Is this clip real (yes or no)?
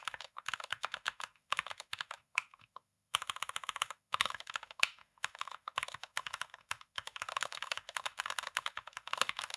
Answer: no